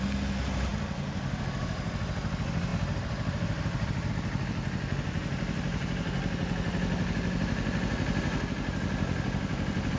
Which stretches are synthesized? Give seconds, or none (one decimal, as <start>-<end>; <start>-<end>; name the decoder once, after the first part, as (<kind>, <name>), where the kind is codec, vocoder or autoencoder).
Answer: none